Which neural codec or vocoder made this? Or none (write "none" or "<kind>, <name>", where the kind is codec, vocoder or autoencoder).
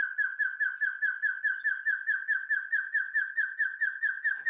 none